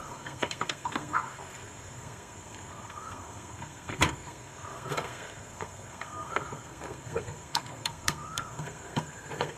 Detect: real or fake fake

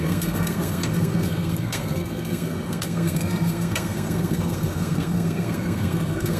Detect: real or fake fake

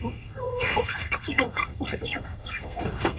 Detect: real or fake fake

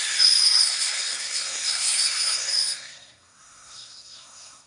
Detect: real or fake fake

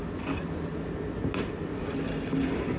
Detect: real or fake real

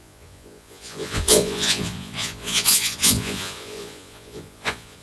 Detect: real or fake fake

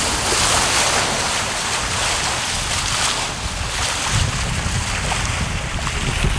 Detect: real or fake real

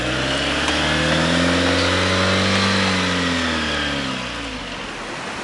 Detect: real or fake real